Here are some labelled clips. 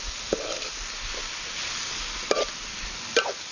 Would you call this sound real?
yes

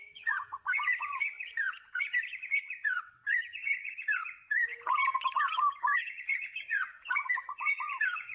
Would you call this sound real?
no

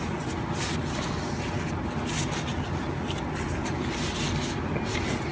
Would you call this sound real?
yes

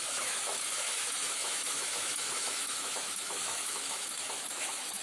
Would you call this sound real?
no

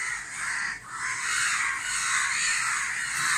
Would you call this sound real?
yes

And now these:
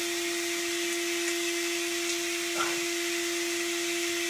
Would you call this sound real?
yes